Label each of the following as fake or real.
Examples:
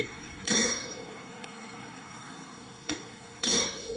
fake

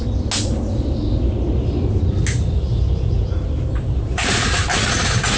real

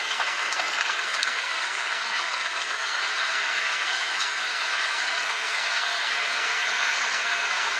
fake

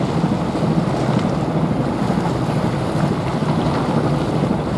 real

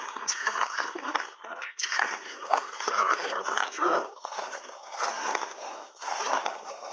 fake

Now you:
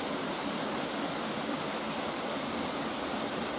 real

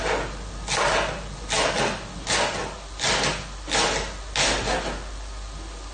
real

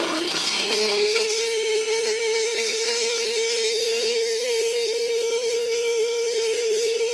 fake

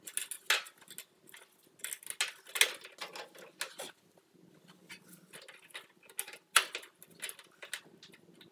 real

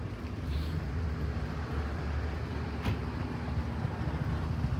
real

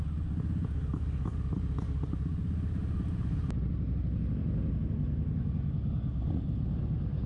real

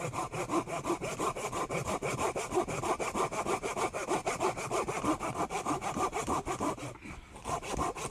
real